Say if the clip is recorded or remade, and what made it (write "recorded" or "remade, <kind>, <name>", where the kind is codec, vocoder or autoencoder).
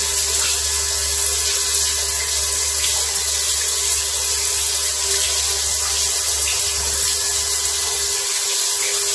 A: recorded